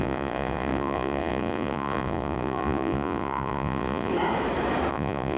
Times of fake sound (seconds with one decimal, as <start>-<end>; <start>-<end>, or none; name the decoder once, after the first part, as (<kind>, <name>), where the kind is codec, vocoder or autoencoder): 0.0-4.1 (vocoder, Vocos); 4.9-5.4